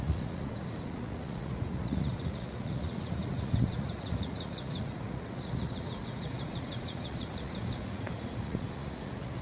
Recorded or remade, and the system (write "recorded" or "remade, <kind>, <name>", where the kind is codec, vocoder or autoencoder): remade, vocoder, Vocos